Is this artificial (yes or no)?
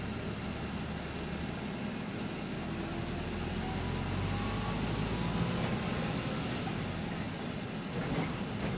no